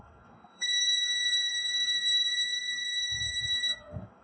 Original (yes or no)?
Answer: no